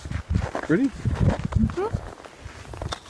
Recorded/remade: recorded